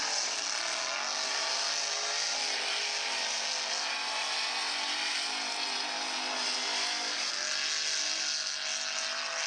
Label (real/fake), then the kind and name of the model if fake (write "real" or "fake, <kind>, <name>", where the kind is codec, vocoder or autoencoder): real